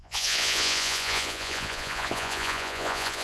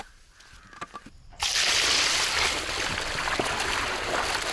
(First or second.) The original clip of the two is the second